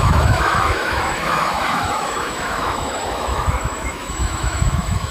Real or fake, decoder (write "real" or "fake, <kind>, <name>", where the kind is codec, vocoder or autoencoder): fake, autoencoder, DAC-VAE